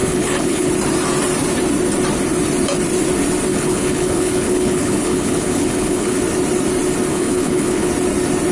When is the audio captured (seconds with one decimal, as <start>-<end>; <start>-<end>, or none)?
0.7-3.5; 6.2-7.1; 7.9-8.5